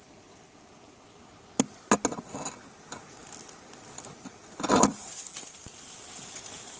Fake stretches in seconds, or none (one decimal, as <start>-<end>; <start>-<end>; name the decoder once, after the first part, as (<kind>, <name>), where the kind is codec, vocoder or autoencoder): none